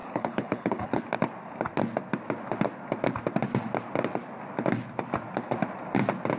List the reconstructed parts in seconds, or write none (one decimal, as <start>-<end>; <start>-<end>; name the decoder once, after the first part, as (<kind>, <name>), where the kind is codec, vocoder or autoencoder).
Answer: 0.0-1.0 (codec, HILCodec)